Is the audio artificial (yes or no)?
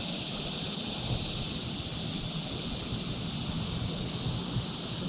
no